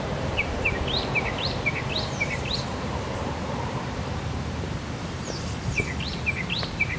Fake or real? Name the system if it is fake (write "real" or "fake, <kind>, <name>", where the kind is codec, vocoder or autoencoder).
fake, vocoder, BigVGAN v2